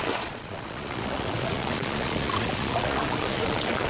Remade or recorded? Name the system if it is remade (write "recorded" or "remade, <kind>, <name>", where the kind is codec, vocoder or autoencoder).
remade, vocoder, Vocos